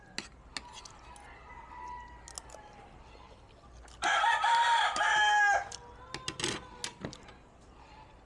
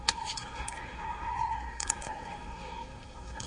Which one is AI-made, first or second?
second